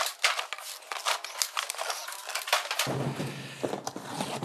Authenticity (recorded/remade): recorded